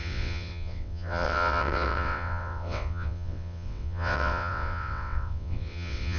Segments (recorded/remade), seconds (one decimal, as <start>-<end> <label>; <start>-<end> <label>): 0.0-6.2 remade